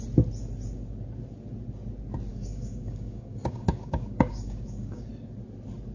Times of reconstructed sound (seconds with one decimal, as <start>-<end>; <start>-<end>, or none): 2.3-5.1